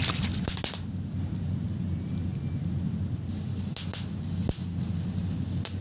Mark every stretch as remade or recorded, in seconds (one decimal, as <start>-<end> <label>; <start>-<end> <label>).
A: 0.0-5.8 recorded